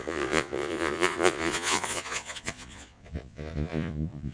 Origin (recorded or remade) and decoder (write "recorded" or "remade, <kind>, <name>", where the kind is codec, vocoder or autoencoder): remade, vocoder, Vocos